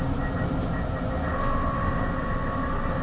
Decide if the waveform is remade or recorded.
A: recorded